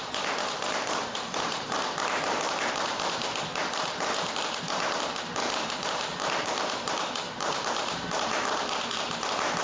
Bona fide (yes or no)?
no